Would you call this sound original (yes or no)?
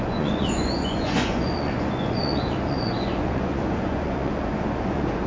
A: no